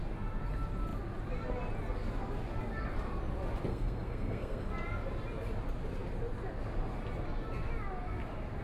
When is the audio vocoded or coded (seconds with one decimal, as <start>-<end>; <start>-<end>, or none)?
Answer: 3.7-4.7